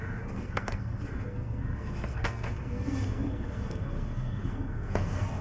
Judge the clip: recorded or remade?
remade